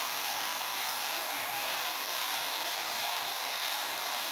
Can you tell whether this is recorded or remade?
remade